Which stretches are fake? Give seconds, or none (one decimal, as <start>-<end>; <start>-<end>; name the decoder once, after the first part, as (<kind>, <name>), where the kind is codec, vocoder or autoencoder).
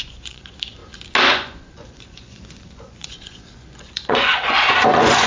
0.0-0.8 (vocoder, Vocos); 1.3-5.3